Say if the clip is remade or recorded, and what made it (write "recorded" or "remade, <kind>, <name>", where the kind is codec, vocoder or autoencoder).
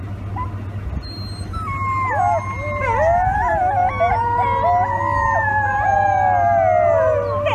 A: recorded